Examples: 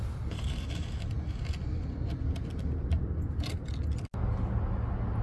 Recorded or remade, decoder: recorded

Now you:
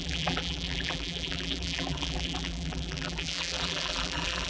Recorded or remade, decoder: remade, vocoder, BigVGAN v2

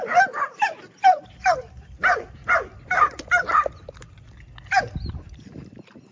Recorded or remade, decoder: recorded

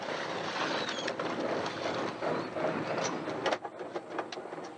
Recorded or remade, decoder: recorded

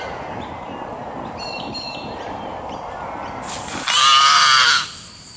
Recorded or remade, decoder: recorded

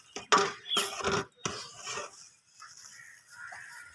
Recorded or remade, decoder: recorded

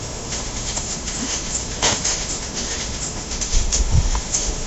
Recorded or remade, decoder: remade, autoencoder, DAC-VAE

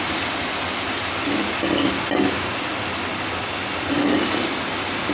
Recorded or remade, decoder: recorded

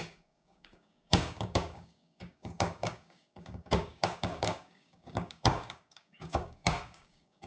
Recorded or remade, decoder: remade, codec, DAC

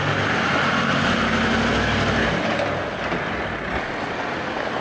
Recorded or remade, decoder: recorded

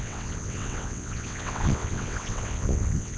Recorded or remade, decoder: remade, vocoder, WaveNeXt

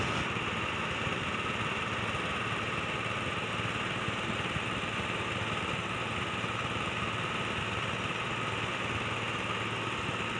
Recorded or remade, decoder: recorded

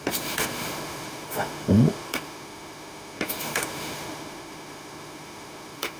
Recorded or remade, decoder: remade, autoencoder, DAC-VAE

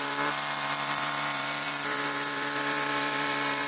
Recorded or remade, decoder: remade, vocoder, BigVGAN v2